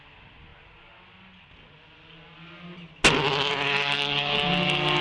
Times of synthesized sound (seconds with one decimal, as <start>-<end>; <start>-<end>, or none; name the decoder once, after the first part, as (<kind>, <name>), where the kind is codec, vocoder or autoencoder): none